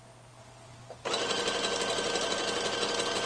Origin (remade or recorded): recorded